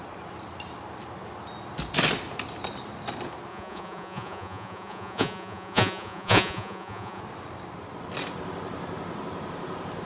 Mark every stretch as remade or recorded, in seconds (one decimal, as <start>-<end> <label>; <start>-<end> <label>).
0.0-3.5 recorded; 3.5-7.2 remade; 7.2-10.1 recorded